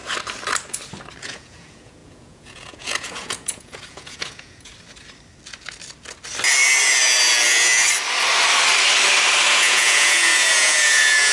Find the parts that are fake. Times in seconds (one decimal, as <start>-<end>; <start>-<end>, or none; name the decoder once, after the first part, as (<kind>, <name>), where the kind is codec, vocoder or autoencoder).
1.2-4.7 (vocoder, Vocos); 9.5-11.3